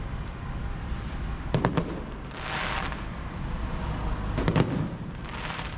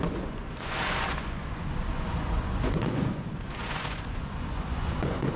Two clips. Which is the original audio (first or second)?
first